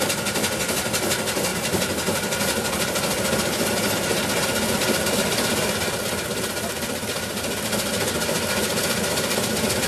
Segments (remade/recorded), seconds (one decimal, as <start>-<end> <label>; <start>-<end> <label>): 0.0-9.9 recorded